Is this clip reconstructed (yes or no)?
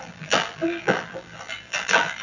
yes